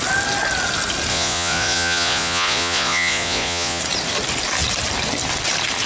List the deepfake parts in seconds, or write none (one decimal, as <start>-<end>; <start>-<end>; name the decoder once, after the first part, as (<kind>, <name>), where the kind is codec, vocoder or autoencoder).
1.1-3.8 (vocoder, Vocos)